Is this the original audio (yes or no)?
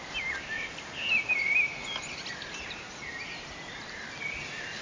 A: yes